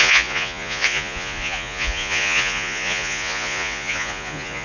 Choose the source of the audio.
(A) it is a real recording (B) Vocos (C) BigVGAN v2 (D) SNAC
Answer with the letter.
B